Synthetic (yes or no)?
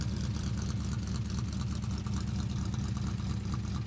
no